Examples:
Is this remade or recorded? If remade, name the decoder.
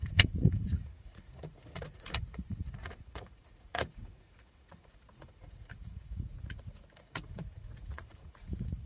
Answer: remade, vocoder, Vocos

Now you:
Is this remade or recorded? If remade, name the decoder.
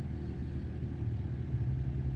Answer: recorded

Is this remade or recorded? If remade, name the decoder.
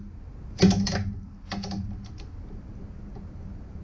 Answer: recorded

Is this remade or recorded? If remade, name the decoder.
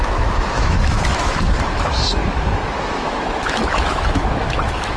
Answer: remade, autoencoder, DAC-VAE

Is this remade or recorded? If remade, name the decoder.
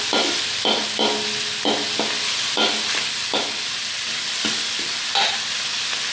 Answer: recorded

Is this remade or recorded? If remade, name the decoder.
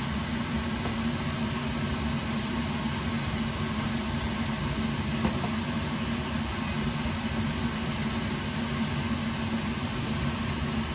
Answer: recorded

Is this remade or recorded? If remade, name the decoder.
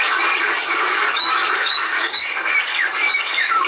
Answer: remade, codec, DAC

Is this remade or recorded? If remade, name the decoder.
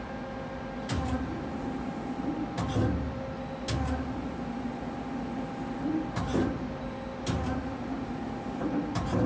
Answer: recorded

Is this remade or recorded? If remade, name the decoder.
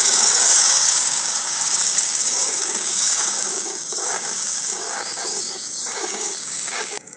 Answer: remade, codec, DAC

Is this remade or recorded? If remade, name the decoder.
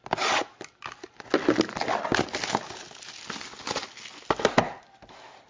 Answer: recorded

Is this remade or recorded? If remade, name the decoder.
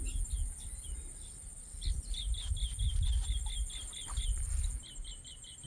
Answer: recorded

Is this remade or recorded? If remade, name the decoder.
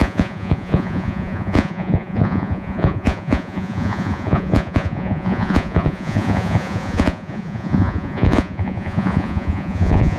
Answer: remade, vocoder, Vocos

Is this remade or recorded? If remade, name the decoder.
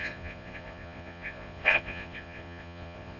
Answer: remade, vocoder, Vocos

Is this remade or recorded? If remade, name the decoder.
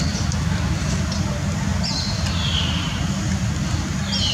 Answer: recorded